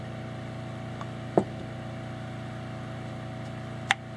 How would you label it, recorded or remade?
recorded